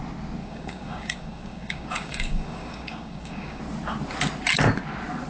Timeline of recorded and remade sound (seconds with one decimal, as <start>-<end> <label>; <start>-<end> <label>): 0.0-0.4 recorded; 0.4-3.6 remade; 3.6-5.3 recorded

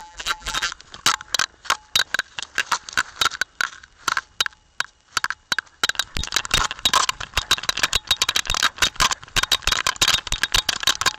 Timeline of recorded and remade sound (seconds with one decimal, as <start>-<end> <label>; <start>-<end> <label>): 0.0-0.7 remade; 0.7-11.2 recorded

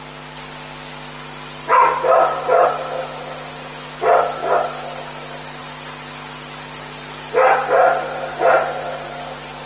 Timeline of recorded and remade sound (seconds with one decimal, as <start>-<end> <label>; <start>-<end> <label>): 0.0-4.4 recorded; 4.4-5.6 remade; 5.6-9.7 recorded

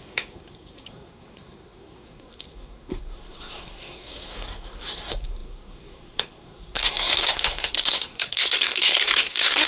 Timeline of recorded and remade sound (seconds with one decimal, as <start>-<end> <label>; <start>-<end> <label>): 0.0-9.7 remade